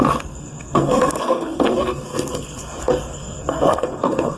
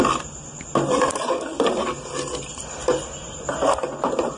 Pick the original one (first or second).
second